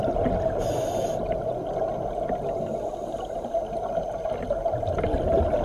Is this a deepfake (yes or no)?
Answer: no